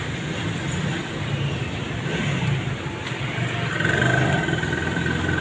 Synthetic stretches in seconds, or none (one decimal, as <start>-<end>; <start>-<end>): none